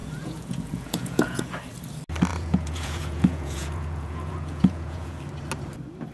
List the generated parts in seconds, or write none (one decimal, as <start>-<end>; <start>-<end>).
0.0-1.4; 2.3-5.2